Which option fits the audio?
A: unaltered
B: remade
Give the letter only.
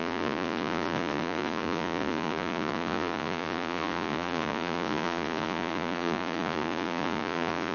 B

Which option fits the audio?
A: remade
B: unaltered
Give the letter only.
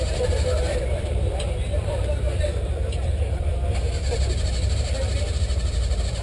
A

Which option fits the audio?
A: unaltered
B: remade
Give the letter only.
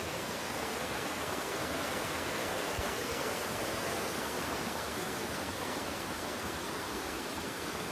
B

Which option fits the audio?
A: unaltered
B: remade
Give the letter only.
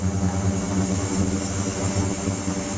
A